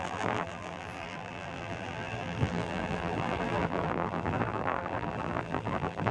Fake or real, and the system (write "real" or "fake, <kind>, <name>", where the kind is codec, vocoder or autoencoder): fake, vocoder, BigVGAN v2